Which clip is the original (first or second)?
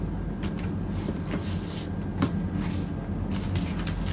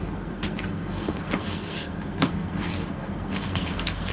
first